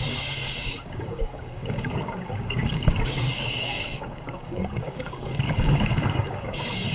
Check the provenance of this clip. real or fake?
fake